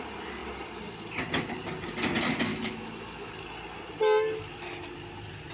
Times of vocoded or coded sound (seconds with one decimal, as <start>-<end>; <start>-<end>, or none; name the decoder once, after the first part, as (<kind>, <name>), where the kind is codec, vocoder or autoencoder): 2.5-3.3 (autoencoder, DAC-VAE)